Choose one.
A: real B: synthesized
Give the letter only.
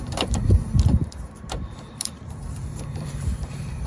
B